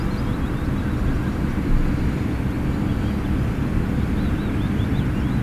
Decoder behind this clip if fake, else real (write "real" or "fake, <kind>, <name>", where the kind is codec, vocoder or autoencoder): real